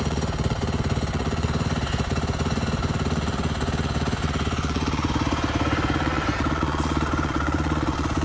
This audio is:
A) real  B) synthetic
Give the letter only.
B